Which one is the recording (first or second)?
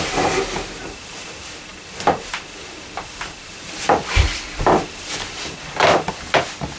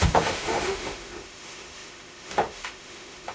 first